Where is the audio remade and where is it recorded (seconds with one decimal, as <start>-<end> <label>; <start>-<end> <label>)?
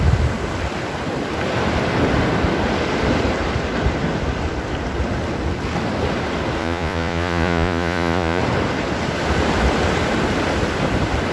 0.0-6.6 recorded; 6.6-8.4 remade; 8.4-11.3 recorded